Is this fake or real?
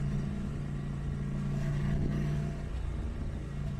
real